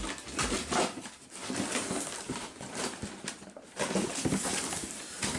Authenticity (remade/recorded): remade